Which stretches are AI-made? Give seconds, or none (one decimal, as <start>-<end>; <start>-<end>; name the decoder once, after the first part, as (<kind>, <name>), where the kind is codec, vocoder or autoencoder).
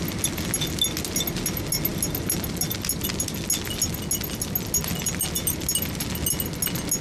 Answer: none